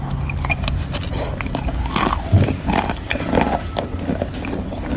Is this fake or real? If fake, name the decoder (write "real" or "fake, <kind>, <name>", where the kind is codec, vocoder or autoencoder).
real